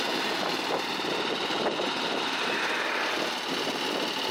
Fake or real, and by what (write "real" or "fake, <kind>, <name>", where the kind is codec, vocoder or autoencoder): real